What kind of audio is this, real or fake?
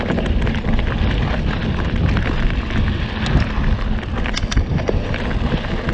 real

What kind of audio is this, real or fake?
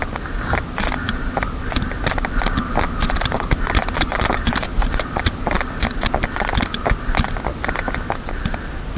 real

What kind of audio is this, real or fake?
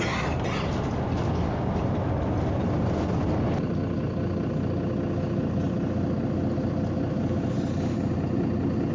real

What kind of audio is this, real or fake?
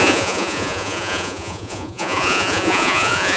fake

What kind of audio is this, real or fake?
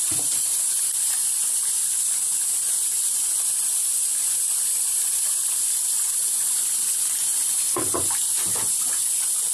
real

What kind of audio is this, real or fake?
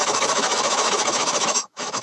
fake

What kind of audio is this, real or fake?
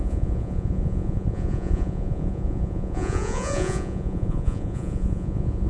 fake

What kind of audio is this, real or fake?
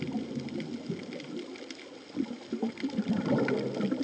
real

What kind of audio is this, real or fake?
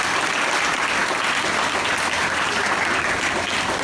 fake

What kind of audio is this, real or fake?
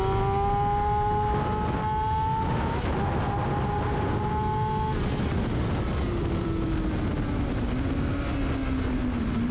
real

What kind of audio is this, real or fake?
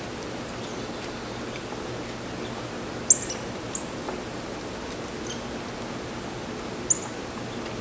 real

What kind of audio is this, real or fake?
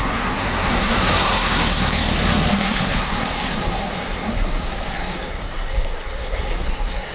fake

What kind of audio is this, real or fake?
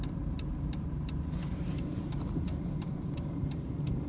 fake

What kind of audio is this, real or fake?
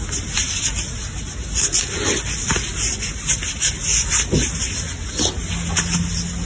real